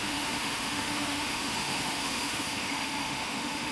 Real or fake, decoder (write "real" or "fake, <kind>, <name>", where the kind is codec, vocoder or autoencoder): fake, autoencoder, DAC-VAE